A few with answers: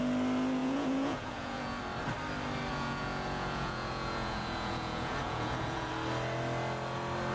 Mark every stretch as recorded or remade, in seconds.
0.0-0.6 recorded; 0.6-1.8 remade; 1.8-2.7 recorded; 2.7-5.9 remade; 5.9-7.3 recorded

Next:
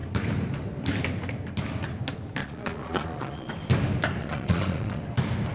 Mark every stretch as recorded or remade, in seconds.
0.0-2.4 recorded; 2.4-3.5 remade; 3.5-4.2 recorded; 4.2-5.0 remade; 5.0-5.5 recorded

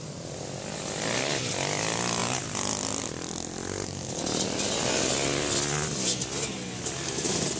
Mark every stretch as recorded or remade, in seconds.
0.0-7.6 recorded

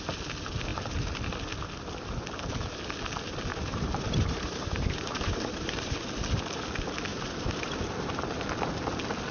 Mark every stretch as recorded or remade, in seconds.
0.0-3.5 recorded; 3.5-5.8 remade; 5.8-7.1 recorded; 7.1-8.2 remade; 8.2-9.3 recorded

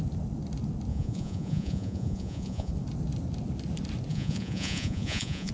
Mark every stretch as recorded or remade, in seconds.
0.0-0.9 recorded; 0.9-2.7 remade; 2.7-4.1 recorded; 4.1-5.5 remade

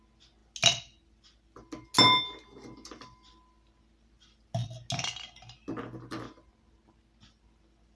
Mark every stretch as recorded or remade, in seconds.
0.0-8.0 recorded

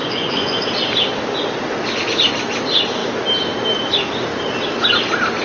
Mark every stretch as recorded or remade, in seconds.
0.0-0.6 remade; 0.6-5.4 recorded

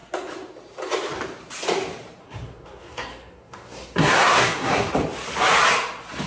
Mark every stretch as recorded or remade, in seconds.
0.0-2.2 recorded; 2.2-4.9 remade; 4.9-6.3 recorded